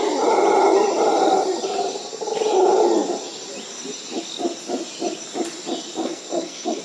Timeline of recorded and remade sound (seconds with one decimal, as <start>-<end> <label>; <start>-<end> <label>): 0.0-6.0 recorded; 6.0-6.8 remade